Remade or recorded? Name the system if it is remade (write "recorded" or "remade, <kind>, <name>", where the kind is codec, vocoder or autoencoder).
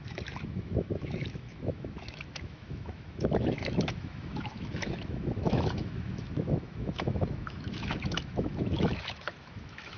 remade, autoencoder, DAC-VAE